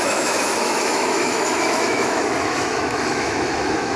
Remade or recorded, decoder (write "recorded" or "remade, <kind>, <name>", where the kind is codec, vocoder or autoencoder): remade, autoencoder, DAC-VAE